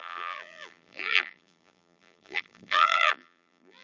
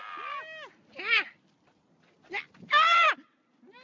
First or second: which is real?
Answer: second